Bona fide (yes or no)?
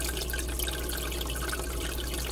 yes